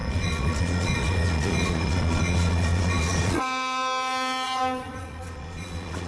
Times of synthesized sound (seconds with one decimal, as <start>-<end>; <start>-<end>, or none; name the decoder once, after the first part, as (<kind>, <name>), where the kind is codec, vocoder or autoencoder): 0.0-6.1 (vocoder, Vocos)